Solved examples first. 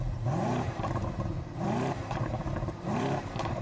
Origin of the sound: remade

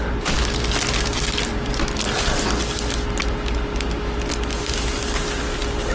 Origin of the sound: recorded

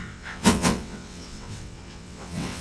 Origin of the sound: remade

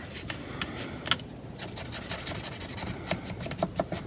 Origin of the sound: recorded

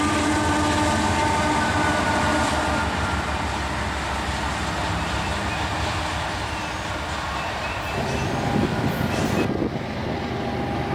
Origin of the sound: recorded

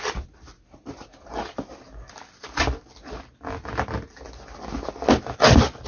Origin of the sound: recorded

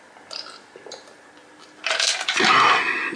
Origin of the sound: recorded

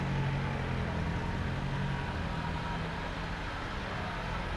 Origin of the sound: recorded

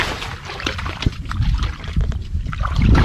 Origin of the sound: remade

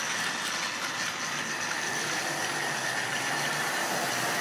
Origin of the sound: recorded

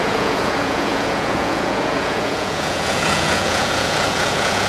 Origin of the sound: remade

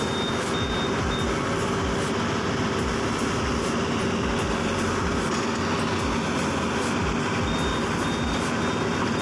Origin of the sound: recorded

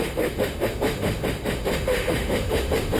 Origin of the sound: remade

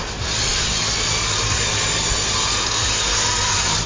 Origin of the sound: recorded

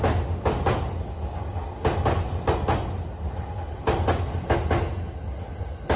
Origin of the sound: recorded